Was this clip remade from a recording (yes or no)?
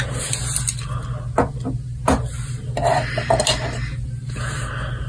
no